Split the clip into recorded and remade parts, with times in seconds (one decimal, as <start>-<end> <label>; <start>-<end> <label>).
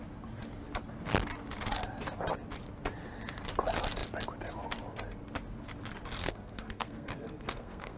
0.0-6.2 recorded; 6.2-8.0 remade